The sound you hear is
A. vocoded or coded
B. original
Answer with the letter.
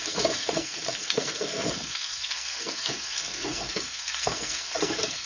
A